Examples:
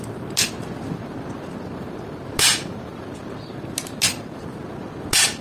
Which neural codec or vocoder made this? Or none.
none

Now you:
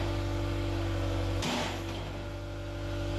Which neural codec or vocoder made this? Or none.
none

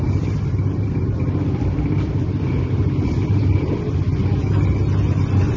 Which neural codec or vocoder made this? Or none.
vocoder, BigVGAN v2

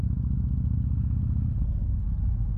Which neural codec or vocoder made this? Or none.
none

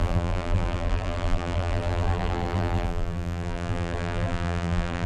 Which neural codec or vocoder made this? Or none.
vocoder, BigVGAN v2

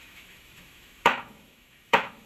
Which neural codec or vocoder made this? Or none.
autoencoder, DAC-VAE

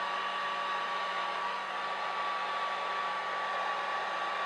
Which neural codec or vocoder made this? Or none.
none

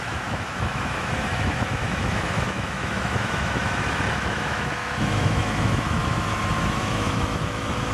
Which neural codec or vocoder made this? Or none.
autoencoder, DAC-VAE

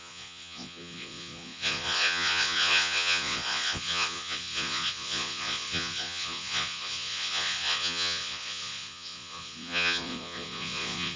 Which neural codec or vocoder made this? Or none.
vocoder, Vocos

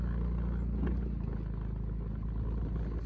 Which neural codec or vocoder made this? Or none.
none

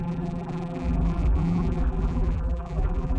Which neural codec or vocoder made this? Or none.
vocoder, BigVGAN v2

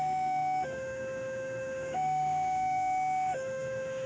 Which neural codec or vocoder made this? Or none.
autoencoder, DAC-VAE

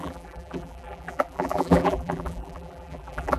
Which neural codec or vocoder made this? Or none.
vocoder, BigVGAN v2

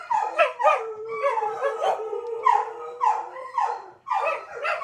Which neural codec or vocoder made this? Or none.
vocoder, BigVGAN v2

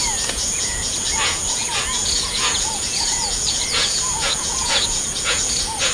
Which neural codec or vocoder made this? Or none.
vocoder, Vocos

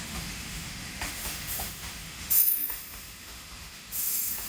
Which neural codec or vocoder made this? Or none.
autoencoder, DAC-VAE